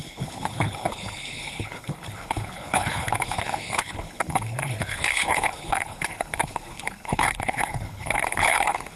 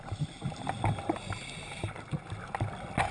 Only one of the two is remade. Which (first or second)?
first